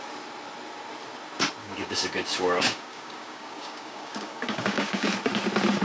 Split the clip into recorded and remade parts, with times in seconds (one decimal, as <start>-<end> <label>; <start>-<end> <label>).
0.0-1.6 recorded; 1.6-5.1 remade; 5.1-5.8 recorded